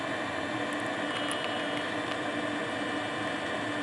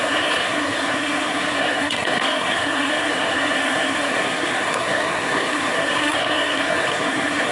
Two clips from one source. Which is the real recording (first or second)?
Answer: first